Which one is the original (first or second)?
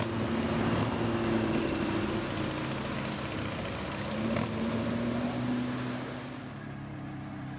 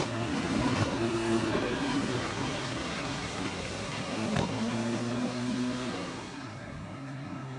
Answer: first